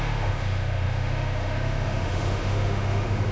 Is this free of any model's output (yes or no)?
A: no